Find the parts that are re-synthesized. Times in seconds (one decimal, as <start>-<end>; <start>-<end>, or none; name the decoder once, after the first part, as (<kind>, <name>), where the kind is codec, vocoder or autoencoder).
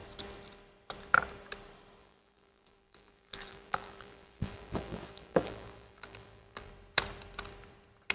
2.0-6.7 (vocoder, BigVGAN v2)